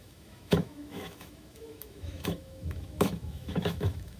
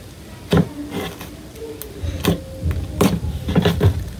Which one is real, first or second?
second